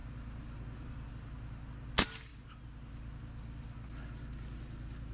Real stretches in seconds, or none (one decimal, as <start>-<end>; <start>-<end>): 0.0-5.1